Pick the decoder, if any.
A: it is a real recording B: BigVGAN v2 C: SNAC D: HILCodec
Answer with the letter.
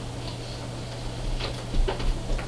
A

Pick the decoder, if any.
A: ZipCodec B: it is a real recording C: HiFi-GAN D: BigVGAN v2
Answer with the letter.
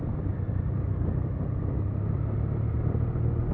B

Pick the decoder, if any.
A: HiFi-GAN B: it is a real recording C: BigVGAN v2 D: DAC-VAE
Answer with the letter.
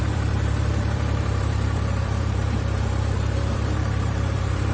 C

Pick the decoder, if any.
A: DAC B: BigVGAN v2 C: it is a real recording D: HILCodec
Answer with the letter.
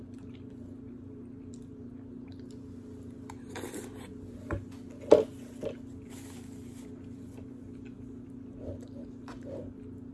C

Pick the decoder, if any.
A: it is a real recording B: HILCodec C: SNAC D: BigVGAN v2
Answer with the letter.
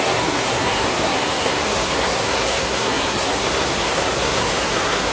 C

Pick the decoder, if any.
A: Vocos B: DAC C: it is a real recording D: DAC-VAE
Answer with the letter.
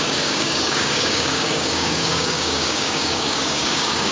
B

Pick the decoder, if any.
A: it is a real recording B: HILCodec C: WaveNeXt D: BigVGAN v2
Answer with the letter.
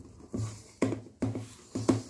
A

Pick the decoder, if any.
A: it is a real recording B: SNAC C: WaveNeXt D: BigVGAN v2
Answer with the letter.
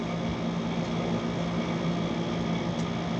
A